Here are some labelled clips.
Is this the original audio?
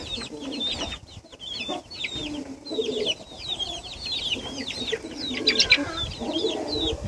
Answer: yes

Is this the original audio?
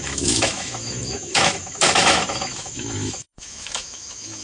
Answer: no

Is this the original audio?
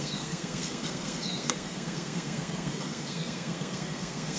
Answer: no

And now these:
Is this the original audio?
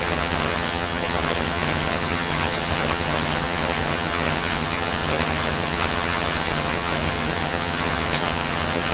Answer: no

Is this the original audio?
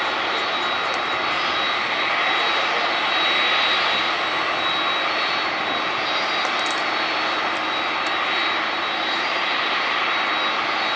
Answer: yes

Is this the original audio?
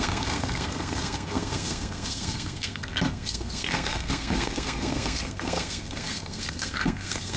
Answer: no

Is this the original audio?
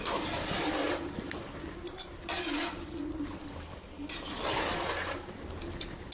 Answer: yes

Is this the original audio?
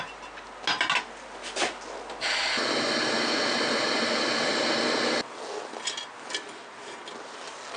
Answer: yes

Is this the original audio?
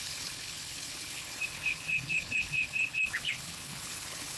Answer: no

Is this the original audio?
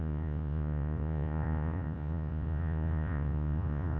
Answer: no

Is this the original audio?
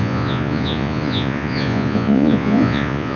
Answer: no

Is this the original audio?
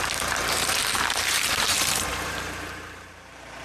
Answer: no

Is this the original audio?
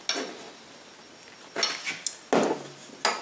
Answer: yes